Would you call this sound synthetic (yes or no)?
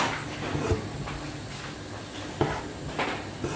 no